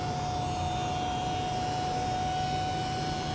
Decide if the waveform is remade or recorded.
recorded